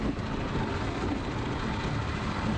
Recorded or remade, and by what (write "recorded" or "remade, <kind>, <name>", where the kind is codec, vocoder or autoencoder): recorded